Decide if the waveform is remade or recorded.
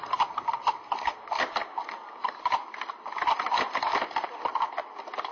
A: recorded